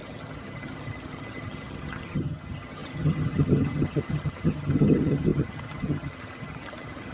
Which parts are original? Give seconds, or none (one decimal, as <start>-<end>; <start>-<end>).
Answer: none